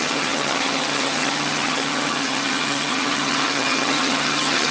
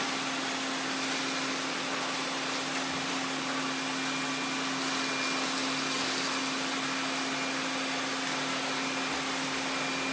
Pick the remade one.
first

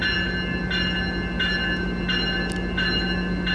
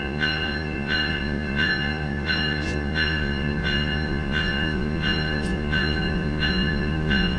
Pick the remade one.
second